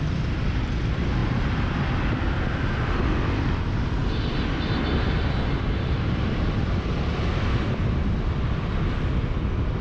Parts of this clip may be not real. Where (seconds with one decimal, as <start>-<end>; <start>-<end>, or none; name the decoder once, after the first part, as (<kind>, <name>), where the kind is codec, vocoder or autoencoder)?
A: 0.0-1.2 (vocoder, BigVGAN v2); 2.6-9.8